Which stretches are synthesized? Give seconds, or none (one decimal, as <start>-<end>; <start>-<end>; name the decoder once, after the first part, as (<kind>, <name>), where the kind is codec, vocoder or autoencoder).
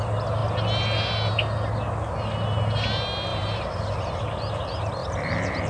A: 3.3-4.2 (vocoder, BigVGAN v2); 5.0-5.7